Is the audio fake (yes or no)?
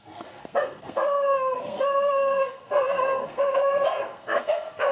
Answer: yes